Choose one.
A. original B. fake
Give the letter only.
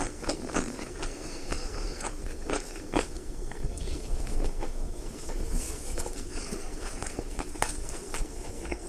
B